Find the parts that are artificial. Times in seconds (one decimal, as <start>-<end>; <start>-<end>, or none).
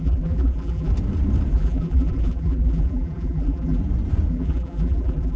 0.0-0.9; 1.5-3.8; 4.3-5.4